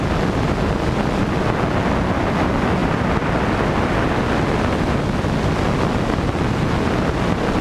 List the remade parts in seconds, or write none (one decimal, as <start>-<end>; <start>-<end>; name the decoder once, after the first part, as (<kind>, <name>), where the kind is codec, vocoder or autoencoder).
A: none